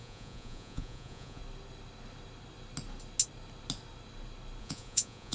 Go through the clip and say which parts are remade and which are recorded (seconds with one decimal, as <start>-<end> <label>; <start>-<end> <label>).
0.0-1.4 remade; 1.4-4.6 recorded; 4.6-5.3 remade